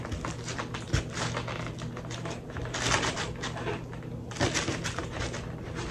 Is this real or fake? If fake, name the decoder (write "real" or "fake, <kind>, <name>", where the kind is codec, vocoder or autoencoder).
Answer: real